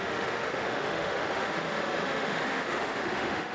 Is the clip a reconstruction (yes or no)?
yes